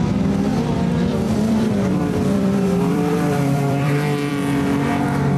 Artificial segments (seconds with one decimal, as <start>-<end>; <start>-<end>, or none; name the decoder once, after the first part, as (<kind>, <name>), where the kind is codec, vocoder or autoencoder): 1.1-4.3 (vocoder, BigVGAN v2)

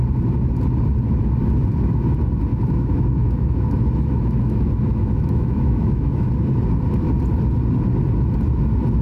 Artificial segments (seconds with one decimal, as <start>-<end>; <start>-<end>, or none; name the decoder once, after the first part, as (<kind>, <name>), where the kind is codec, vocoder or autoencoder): 2.5-6.3 (autoencoder, DAC-VAE)

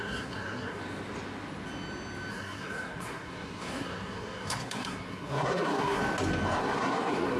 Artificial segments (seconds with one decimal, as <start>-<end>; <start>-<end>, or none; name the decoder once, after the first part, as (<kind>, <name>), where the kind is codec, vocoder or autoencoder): 0.0-0.8 (codec, SNAC); 2.3-6.0; 6.6-7.4

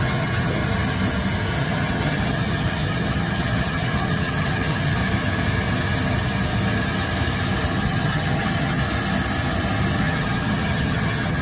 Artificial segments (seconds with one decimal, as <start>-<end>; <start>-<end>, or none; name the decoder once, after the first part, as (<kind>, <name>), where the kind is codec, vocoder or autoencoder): 0.0-0.6 (vocoder, HiFi-GAN); 1.5-5.0; 7.8-8.8; 10.0-11.4

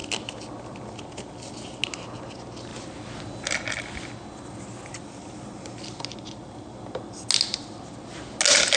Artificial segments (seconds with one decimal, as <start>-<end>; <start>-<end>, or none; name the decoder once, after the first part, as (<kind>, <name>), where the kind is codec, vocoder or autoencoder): none